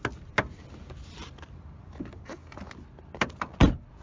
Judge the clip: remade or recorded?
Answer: recorded